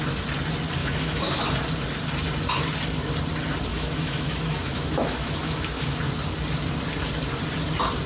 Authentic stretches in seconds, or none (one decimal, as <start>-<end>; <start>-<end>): 0.0-0.8; 1.4-3.7; 5.9-8.1